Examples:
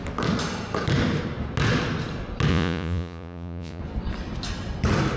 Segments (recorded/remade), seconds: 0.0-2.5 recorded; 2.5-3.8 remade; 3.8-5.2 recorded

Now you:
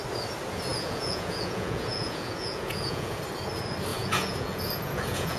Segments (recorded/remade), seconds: 0.0-0.7 recorded; 0.7-3.2 remade; 3.2-3.9 recorded; 3.9-5.4 remade

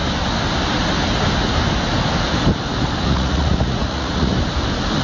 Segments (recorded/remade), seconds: 0.0-3.0 recorded; 3.0-4.3 remade; 4.3-5.0 recorded

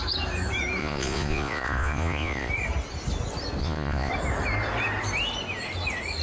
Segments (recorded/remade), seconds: 0.0-0.8 recorded; 0.8-2.5 remade; 2.5-3.6 recorded; 3.6-4.1 remade; 4.1-6.2 recorded

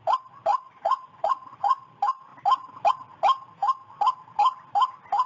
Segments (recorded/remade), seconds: 0.0-0.5 recorded; 0.5-1.9 remade; 1.9-5.3 recorded

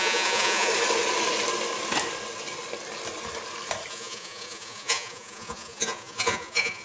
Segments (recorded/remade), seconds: 0.0-0.7 remade; 0.7-3.9 recorded; 3.9-6.8 remade

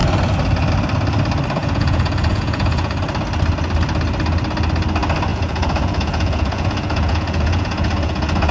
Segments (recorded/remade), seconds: 0.0-1.6 recorded; 1.6-3.0 remade; 3.0-5.3 recorded; 5.3-8.5 remade

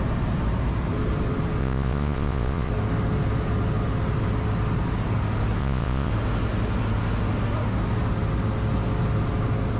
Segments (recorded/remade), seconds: 0.0-1.6 recorded; 1.6-2.7 remade; 2.7-5.6 recorded; 5.6-6.1 remade; 6.1-9.8 recorded